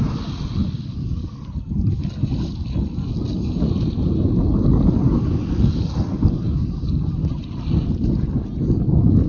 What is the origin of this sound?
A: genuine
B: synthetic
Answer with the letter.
A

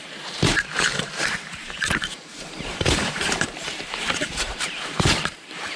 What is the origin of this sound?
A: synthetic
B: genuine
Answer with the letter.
A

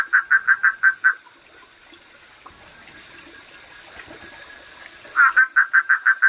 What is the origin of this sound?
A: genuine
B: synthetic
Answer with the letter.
A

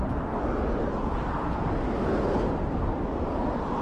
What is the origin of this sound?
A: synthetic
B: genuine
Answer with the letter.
B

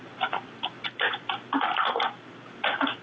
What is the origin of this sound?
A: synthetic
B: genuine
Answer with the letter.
B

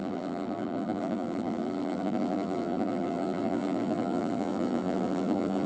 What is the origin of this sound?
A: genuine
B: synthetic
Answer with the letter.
B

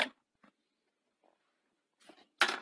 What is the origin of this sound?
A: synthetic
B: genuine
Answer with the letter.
B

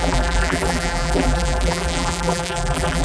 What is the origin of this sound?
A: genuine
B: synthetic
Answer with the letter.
B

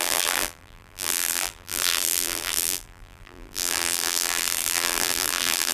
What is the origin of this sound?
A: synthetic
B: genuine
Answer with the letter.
A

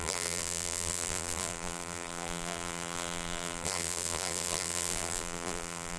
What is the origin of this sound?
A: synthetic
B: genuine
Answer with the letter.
A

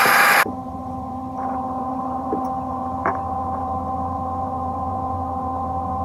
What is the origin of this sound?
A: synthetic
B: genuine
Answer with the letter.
A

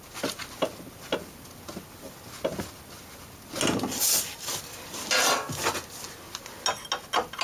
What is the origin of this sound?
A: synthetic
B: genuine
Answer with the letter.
B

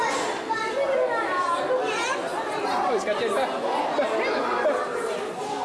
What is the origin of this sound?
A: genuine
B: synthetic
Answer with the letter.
A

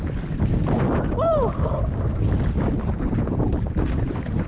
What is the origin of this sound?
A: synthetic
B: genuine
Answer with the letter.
A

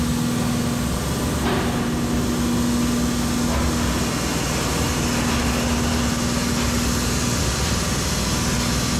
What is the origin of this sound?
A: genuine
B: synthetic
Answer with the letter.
A